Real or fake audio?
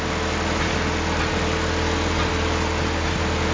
real